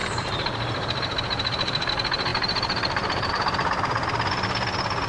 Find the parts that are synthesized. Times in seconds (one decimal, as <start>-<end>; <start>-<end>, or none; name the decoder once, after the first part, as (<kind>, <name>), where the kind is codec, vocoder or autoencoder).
0.0-1.9 (vocoder, BigVGAN v2); 2.3-3.3